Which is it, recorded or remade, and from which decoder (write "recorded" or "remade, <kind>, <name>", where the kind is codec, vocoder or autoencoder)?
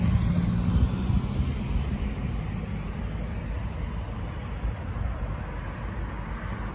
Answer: recorded